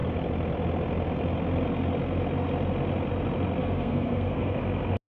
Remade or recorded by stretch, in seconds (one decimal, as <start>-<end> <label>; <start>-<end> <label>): 0.0-3.6 recorded; 3.6-4.5 remade; 4.5-5.1 recorded